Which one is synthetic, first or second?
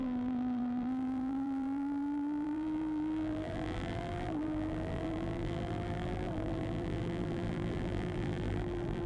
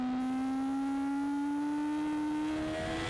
first